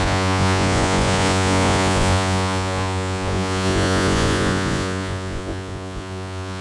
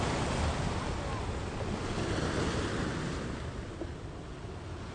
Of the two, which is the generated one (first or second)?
first